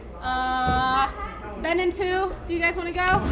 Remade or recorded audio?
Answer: recorded